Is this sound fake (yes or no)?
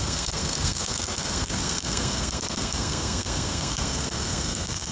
yes